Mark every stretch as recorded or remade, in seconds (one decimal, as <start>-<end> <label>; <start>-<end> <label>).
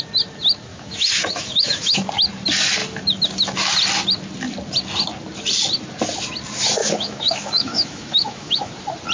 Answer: 0.0-0.7 recorded; 0.7-2.1 remade; 2.1-6.8 recorded; 6.8-8.7 remade; 8.7-9.1 recorded